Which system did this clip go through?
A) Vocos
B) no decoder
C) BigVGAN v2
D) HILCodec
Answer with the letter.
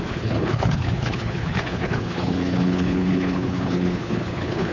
D